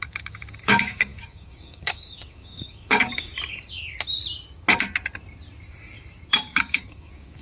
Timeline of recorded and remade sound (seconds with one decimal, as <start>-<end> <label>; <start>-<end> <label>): 0.0-3.3 remade; 3.3-6.3 recorded; 6.3-7.4 remade